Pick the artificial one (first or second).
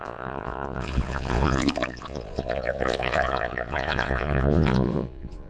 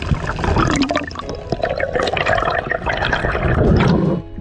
first